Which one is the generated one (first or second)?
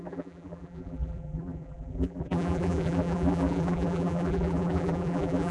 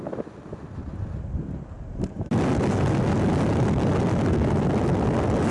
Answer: first